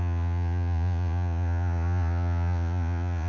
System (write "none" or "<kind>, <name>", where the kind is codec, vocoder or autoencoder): vocoder, Vocos